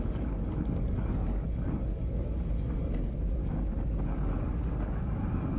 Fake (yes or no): yes